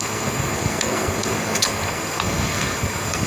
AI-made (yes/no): yes